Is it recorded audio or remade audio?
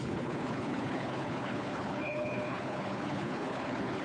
remade